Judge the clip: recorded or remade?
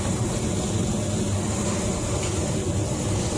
recorded